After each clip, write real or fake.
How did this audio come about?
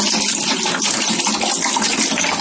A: real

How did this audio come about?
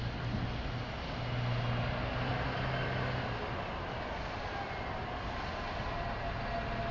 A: real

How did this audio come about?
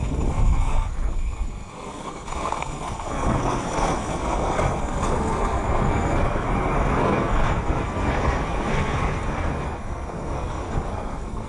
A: fake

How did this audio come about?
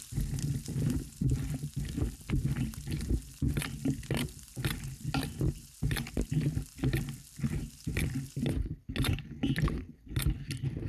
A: real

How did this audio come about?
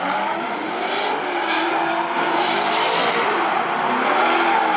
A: real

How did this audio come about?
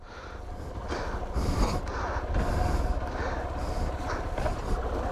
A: real